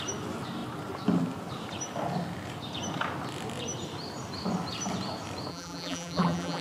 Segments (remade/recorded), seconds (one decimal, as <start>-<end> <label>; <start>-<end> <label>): 0.0-5.5 recorded; 5.5-6.6 remade